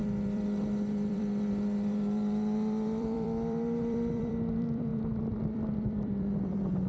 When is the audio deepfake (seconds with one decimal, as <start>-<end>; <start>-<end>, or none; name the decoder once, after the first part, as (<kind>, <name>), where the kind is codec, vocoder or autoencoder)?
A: 0.0-6.9 (vocoder, BigVGAN v2)